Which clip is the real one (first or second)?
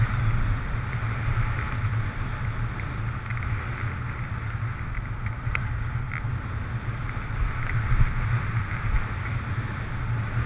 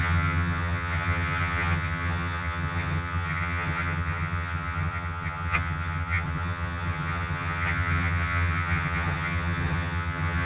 first